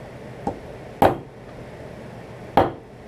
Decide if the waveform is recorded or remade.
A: recorded